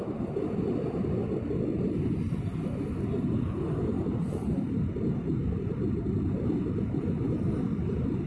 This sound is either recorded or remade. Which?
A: remade